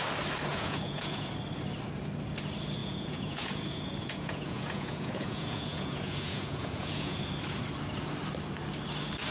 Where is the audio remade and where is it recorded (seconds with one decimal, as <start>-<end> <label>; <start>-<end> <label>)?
0.0-0.5 recorded; 0.5-1.3 remade; 1.3-2.8 recorded; 2.8-7.2 remade; 7.2-9.3 recorded